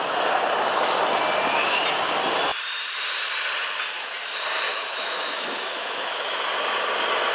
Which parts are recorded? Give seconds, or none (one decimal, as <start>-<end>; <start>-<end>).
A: 0.0-4.7; 6.4-7.3